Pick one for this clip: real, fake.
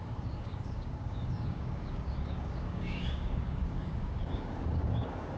fake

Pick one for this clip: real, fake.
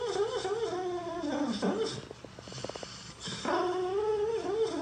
real